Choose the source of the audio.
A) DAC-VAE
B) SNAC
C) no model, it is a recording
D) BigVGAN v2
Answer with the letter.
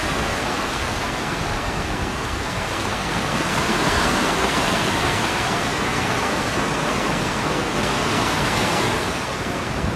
B